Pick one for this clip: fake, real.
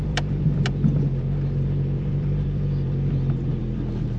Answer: fake